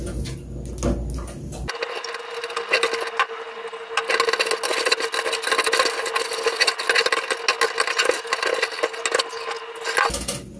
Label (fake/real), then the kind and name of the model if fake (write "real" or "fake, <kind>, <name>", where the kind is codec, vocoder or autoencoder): real